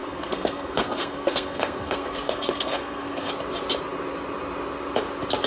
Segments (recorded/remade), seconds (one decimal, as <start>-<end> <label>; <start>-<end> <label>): 0.0-3.3 remade; 3.3-5.5 recorded